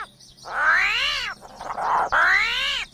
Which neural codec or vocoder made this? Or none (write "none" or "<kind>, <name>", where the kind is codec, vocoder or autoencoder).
none